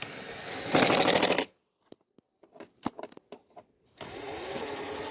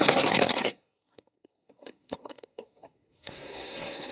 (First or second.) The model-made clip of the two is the second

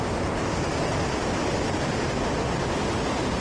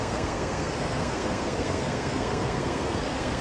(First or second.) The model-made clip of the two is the second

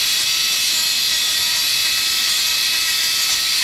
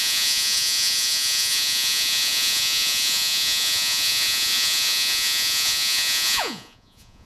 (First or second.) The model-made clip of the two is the second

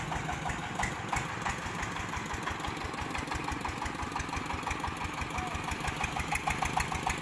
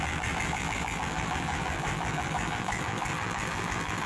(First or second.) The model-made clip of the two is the second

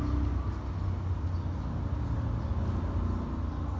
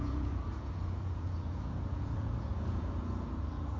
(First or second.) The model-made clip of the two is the second